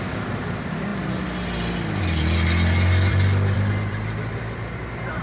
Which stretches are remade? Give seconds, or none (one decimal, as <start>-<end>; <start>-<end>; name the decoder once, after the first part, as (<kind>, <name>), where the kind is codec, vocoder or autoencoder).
3.1-4.2 (vocoder, BigVGAN v2)